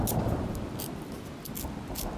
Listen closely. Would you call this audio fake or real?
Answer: real